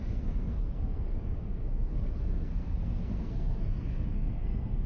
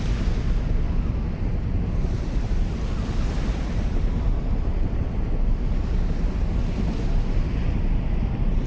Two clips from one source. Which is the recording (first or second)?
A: second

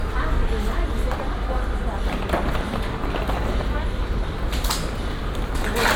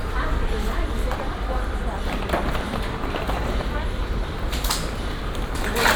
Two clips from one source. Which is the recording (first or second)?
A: first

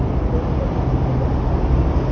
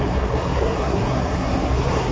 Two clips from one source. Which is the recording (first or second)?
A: first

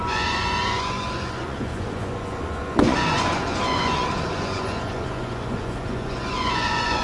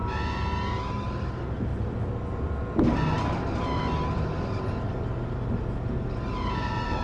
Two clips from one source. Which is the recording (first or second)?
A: second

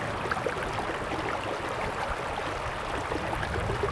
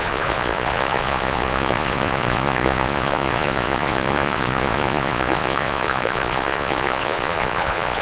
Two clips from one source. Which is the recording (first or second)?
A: first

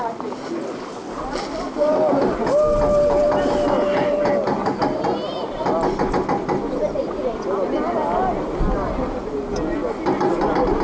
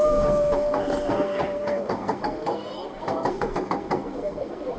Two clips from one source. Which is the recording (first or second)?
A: first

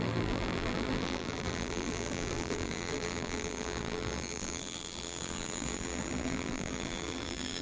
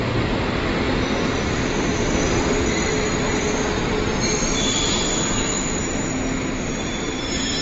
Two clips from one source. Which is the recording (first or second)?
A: second